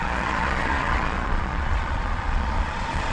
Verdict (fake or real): fake